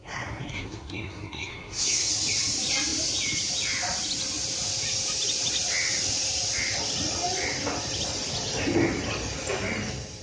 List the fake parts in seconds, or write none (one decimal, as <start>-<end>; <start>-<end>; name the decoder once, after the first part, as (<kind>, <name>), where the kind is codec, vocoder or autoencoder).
0.0-2.1 (codec, SNAC)